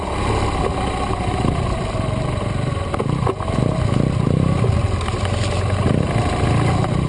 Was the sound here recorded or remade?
recorded